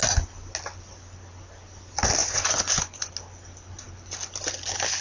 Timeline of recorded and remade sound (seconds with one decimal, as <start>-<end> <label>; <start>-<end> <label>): 0.0-2.2 recorded; 2.2-3.1 remade; 3.1-5.0 recorded